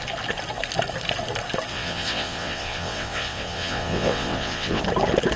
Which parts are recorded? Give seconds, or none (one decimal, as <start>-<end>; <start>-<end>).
0.0-1.7; 4.8-5.4